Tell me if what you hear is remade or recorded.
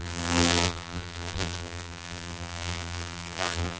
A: remade